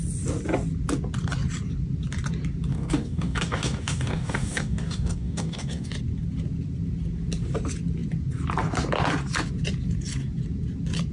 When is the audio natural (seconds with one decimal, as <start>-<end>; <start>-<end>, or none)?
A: 0.0-2.7; 5.9-11.1